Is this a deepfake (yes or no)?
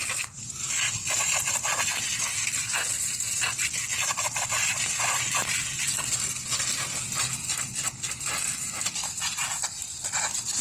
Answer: no